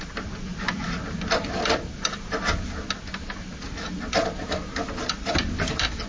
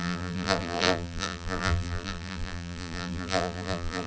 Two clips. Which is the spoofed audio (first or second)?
second